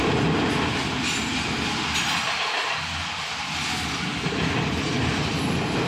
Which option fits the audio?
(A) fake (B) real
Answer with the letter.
A